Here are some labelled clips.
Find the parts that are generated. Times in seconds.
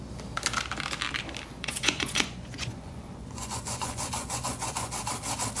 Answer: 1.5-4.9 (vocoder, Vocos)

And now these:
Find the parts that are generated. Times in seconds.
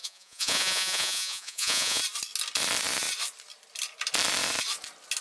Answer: 0.0-2.0 (vocoder, Vocos)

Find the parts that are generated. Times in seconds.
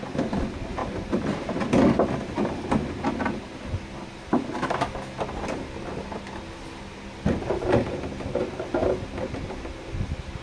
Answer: none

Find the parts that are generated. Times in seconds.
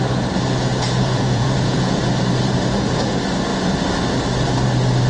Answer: 0.7-2.0 (vocoder, Vocos)